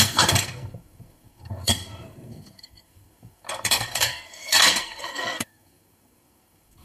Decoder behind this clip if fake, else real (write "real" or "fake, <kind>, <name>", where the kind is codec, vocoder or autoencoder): fake, codec, SNAC